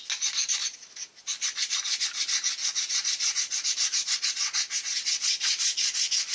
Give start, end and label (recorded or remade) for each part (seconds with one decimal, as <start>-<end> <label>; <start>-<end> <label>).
0.0-2.6 recorded; 2.6-4.7 remade; 4.7-6.3 recorded